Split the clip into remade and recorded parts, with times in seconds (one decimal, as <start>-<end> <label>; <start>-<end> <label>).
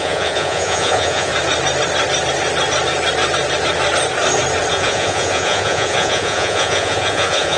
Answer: 0.0-1.3 remade; 1.3-4.7 recorded; 4.7-7.6 remade